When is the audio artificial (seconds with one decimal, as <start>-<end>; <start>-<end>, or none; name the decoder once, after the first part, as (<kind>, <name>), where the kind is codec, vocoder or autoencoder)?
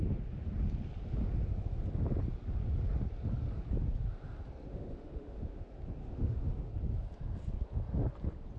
4.7-5.6 (autoencoder, DAC-VAE); 6.0-6.7